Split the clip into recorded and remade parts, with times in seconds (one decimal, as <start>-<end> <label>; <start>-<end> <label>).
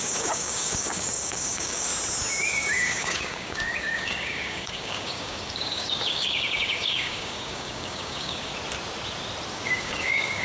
0.0-1.9 remade; 1.9-2.5 recorded; 2.5-8.5 remade; 8.5-9.5 recorded; 9.5-10.4 remade